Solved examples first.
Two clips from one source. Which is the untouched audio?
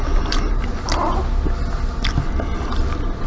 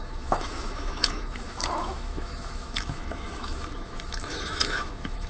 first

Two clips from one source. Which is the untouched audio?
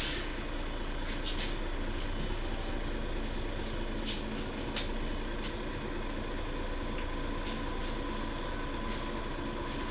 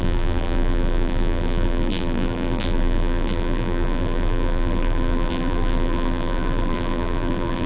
first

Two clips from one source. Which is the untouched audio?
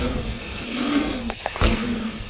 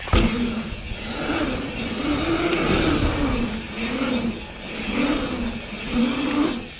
second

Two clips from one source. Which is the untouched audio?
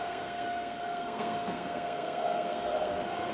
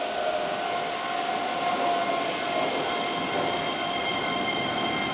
second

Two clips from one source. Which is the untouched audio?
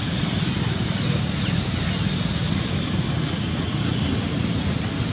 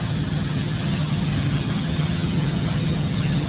first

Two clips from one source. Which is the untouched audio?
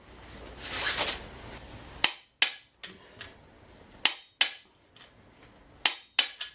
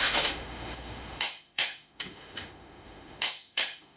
first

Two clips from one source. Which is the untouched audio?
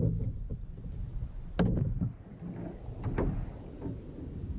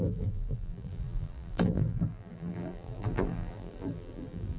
first